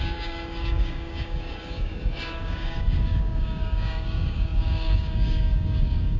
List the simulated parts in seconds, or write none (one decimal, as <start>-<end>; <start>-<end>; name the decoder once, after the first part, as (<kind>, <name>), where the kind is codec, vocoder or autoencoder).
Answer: 0.0-6.2 (codec, DAC)